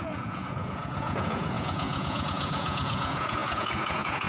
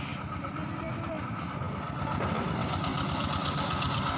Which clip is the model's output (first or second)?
first